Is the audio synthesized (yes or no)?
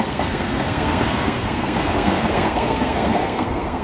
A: yes